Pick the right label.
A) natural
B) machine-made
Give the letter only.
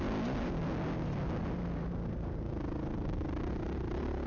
A